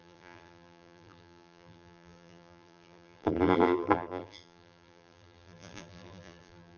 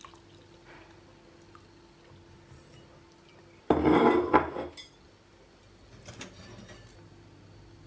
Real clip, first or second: second